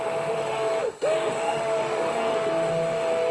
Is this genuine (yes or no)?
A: no